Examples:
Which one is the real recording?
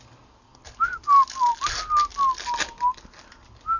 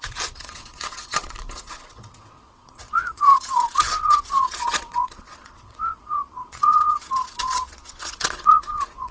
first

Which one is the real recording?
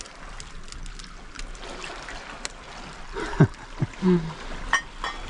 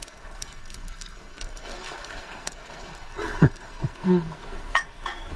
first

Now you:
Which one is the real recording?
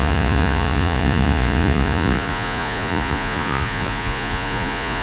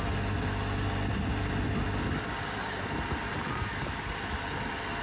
second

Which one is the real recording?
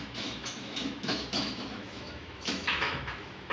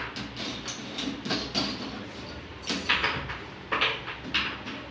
second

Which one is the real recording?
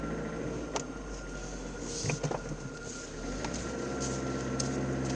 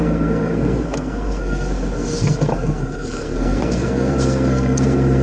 first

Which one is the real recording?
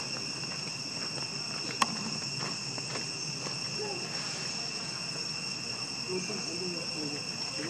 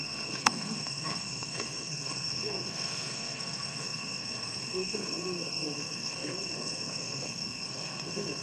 first